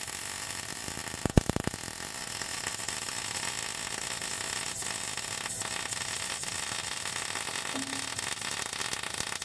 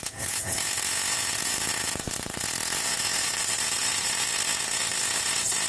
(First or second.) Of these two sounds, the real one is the first